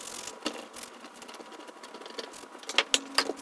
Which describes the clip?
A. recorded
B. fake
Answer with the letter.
A